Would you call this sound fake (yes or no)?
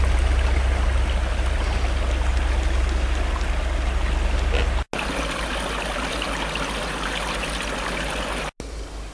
no